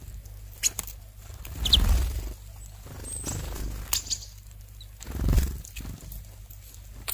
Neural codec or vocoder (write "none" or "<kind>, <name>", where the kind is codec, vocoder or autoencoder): none